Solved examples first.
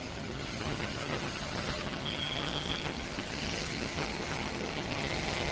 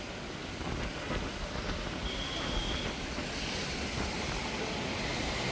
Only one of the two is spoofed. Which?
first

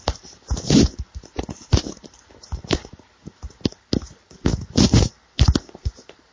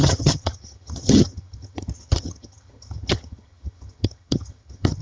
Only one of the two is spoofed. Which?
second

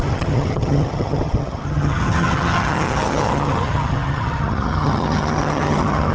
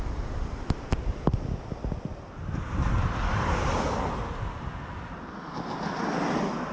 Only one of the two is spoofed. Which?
first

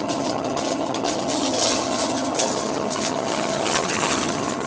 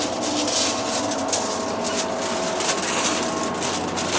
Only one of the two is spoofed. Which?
first